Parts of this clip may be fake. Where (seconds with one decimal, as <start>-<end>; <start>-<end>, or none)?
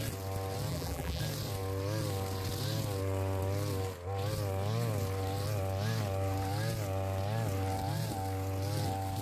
0.7-1.2